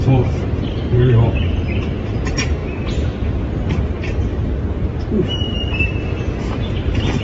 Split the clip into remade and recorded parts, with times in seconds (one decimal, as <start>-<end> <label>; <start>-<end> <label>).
0.0-2.6 remade; 2.6-7.2 recorded